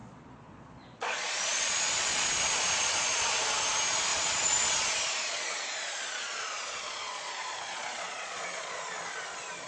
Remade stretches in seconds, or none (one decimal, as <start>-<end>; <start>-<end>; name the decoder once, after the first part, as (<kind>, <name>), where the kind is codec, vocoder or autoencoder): 0.0-3.4 (vocoder, Vocos); 4.1-8.8